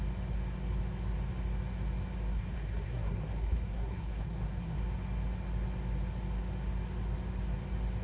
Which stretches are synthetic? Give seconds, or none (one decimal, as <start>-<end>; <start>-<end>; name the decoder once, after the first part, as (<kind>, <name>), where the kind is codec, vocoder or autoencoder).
2.3-4.8 (codec, SNAC)

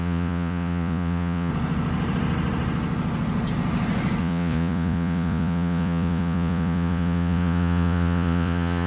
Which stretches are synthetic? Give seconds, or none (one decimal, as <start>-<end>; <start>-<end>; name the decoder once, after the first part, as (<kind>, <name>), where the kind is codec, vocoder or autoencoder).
0.0-1.5 (vocoder, Vocos); 4.2-8.9

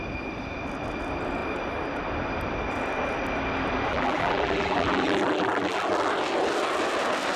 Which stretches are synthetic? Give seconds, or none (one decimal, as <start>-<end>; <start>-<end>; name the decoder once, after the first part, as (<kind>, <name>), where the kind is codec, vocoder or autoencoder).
3.9-6.1 (vocoder, BigVGAN v2)

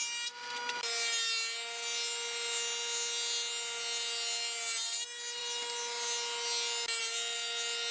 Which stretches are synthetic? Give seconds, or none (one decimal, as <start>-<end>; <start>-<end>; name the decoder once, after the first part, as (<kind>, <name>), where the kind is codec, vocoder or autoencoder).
none